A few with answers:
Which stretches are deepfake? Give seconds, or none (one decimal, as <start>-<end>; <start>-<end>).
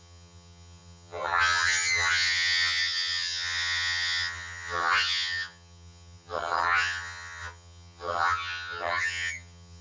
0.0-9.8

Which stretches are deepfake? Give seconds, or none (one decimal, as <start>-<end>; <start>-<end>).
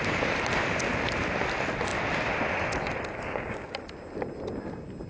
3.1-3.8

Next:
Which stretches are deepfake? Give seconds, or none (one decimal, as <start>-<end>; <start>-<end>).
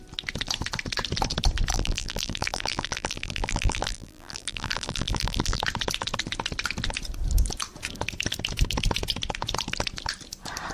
1.7-5.6